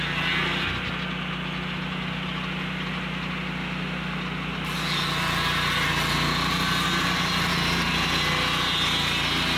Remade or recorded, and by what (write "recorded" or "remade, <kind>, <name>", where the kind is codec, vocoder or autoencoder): recorded